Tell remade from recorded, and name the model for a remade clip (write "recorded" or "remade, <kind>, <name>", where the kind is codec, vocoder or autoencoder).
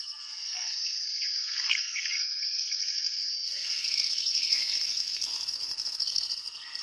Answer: remade, codec, SNAC